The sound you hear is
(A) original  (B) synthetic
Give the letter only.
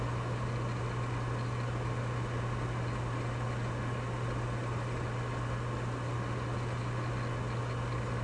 A